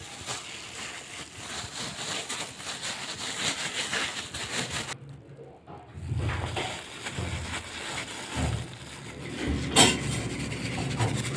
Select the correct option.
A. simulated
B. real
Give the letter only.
B